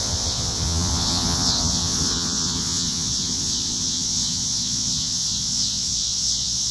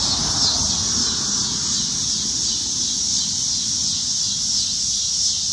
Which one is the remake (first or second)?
first